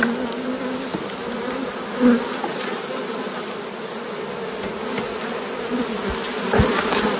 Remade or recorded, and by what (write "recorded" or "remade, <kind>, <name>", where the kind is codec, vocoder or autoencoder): recorded